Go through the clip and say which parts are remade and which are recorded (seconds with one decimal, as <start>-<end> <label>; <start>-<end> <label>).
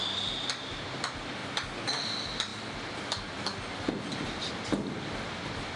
0.0-1.4 remade; 1.4-2.0 recorded; 2.0-5.8 remade